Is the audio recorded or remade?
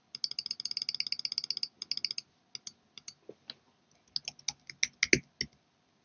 recorded